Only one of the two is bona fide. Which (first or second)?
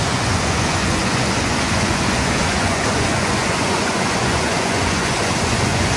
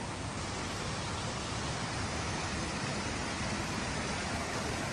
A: second